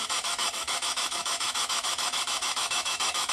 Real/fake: fake